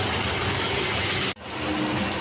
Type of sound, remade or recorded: recorded